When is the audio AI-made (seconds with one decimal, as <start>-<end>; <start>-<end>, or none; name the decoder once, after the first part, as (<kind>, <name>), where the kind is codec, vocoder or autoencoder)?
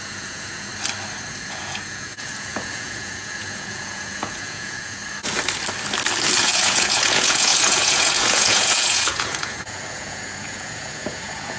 0.0-0.7 (vocoder, Vocos); 1.3-5.0; 6.4-11.6